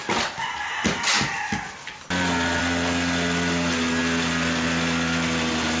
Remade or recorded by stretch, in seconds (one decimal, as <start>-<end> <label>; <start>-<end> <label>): 0.0-5.8 recorded